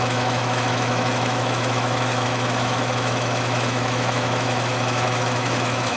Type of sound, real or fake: fake